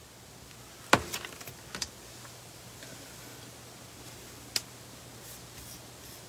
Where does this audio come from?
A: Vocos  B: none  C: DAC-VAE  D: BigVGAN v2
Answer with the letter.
B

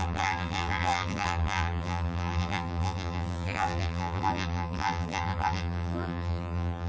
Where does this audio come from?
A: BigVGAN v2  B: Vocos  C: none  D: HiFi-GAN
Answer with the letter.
A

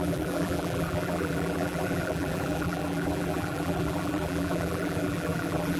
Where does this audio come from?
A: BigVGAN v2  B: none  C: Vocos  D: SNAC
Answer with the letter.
A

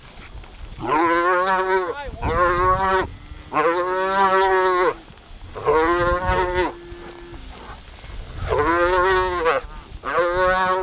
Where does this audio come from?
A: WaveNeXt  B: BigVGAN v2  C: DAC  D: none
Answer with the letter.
D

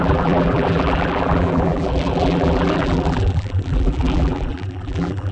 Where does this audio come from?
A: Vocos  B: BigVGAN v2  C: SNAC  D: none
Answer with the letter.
B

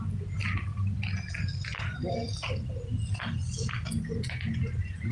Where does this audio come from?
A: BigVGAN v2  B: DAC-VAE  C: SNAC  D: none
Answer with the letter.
D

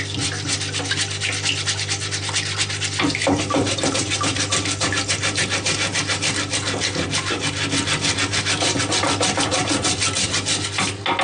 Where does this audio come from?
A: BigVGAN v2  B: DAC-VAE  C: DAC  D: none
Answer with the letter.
D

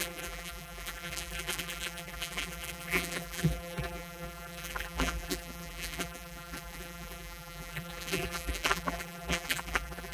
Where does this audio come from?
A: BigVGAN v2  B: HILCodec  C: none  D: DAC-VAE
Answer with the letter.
A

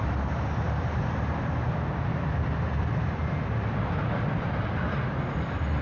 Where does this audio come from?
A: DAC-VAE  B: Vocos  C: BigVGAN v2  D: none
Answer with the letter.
C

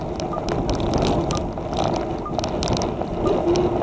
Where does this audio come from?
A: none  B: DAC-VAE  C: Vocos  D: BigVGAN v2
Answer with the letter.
A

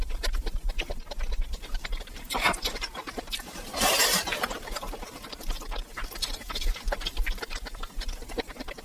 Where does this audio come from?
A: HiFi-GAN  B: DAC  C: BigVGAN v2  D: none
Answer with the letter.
C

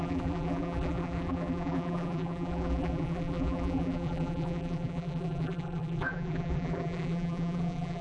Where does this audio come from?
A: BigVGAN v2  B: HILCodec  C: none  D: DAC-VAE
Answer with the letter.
A